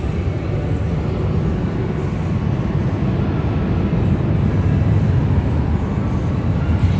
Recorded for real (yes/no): yes